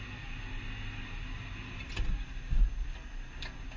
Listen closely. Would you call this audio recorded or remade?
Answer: recorded